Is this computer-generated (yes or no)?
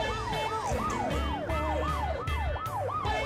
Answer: no